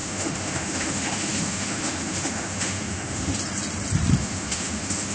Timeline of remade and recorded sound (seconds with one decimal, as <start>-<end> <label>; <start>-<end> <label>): 0.0-3.3 remade; 3.3-4.2 recorded; 4.2-5.1 remade